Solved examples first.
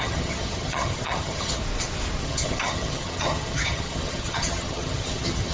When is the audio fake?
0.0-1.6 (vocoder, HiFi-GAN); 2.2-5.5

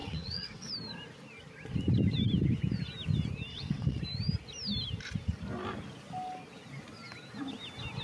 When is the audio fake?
0.0-0.7 (vocoder, WaveNeXt); 3.5-4.0

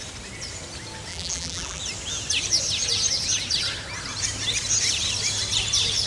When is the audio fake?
1.1-1.8 (vocoder, BigVGAN v2)

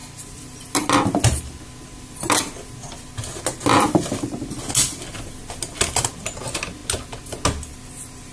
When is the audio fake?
none

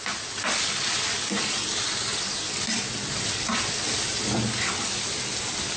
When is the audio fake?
none

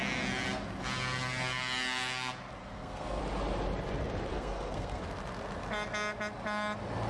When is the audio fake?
2.6-3.2 (codec, SNAC); 4.3-5.0